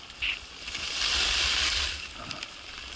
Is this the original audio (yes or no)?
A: yes